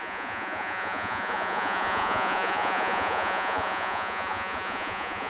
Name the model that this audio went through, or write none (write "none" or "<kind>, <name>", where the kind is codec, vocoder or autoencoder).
vocoder, Vocos